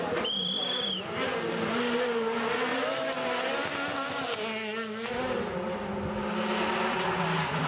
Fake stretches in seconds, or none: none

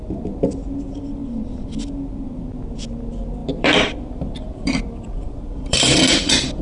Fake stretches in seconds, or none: 3.4-6.6 (vocoder, BigVGAN v2)

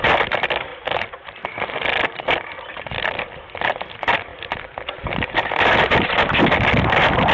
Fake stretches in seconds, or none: 0.0-7.3 (vocoder, BigVGAN v2)

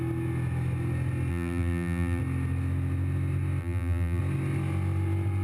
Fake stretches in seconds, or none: 1.3-2.2 (vocoder, BigVGAN v2); 3.6-4.2

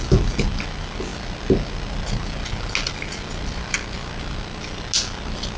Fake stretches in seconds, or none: none

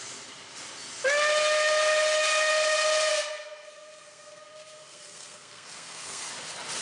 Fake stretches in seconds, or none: 3.1-6.3 (codec, SNAC)

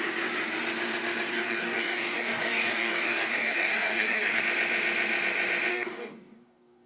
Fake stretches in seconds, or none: 1.3-4.4 (codec, DAC); 5.7-6.9